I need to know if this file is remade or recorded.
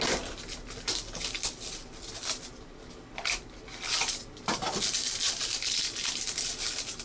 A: recorded